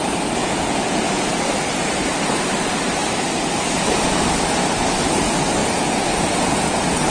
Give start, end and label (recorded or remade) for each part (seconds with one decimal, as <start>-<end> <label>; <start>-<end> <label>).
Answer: 0.0-0.4 recorded; 0.4-1.3 remade; 1.3-5.6 recorded; 5.6-7.1 remade